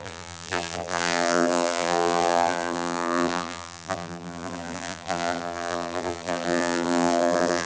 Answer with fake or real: fake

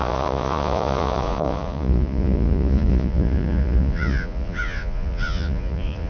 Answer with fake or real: fake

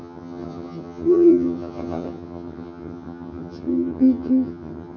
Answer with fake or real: fake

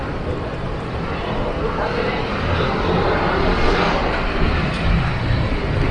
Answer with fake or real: fake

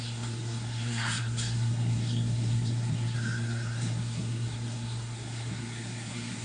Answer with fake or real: fake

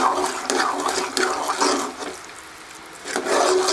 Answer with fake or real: real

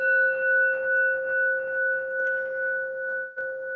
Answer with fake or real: real